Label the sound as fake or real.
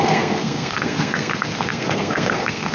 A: fake